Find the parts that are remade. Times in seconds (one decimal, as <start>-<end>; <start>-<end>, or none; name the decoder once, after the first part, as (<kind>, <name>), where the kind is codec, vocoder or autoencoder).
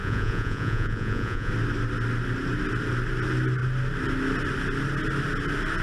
0.0-1.5 (vocoder, Vocos)